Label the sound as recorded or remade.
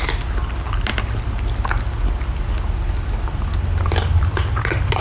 recorded